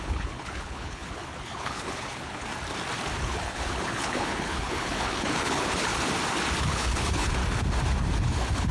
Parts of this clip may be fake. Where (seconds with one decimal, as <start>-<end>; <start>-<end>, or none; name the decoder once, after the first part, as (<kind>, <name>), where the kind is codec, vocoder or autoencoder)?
0.0-2.5 (codec, HILCodec); 3.2-5.9; 6.6-7.4; 8.2-8.7